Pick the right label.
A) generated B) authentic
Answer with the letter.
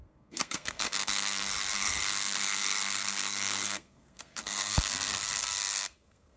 A